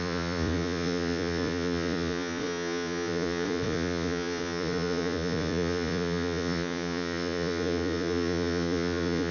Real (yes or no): no